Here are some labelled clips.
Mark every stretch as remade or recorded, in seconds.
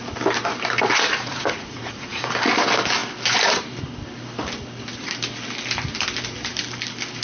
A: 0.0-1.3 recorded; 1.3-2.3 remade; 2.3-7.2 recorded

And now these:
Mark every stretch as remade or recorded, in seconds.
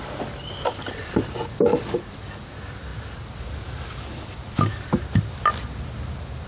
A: 0.0-6.5 recorded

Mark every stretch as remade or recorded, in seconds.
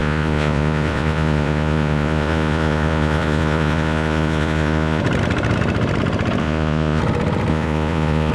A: 0.0-5.0 remade; 5.0-6.4 recorded; 6.4-7.0 remade; 7.0-7.5 recorded; 7.5-8.3 remade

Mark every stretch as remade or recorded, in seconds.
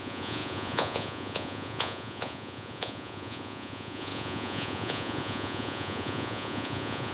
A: 0.0-7.1 remade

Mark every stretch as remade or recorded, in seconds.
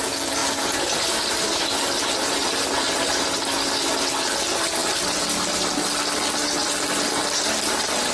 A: 0.0-8.1 recorded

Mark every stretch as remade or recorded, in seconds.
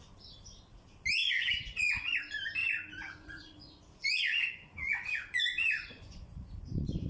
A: 0.0-1.2 recorded; 1.2-2.2 remade; 2.2-2.6 recorded; 2.6-7.1 remade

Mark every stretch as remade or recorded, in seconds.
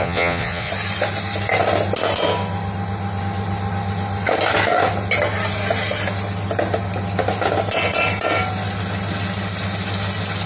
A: 0.0-0.7 remade; 0.7-10.5 recorded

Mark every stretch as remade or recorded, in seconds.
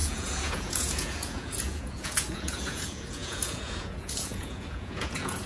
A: 0.0-5.5 remade